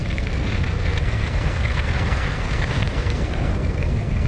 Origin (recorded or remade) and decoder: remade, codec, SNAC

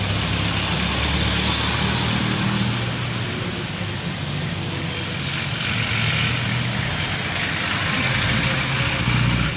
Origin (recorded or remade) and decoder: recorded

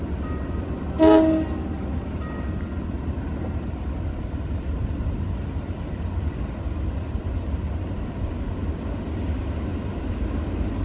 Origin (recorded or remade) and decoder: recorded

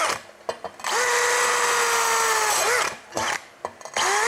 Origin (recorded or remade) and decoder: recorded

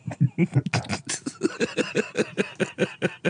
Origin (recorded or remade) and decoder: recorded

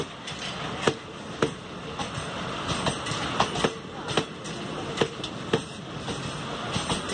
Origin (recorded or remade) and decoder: recorded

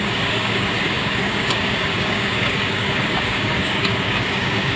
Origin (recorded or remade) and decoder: remade, codec, DAC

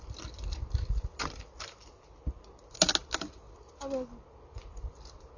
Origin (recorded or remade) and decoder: recorded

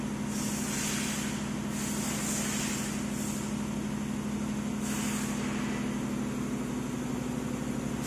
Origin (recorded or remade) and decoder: recorded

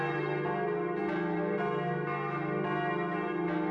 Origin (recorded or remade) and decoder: recorded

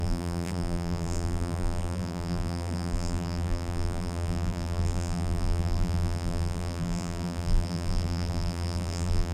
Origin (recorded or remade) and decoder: remade, vocoder, BigVGAN v2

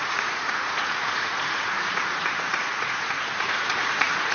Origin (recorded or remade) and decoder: remade, vocoder, Vocos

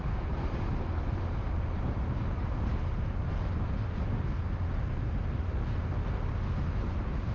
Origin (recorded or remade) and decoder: recorded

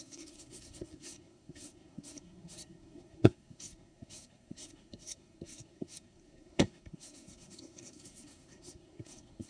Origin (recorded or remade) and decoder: remade, codec, SNAC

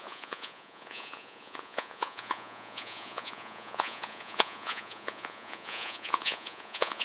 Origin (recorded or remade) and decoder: remade, vocoder, Vocos